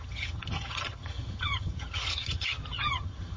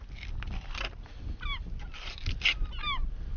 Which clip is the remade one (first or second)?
first